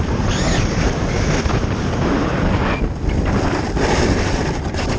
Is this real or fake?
real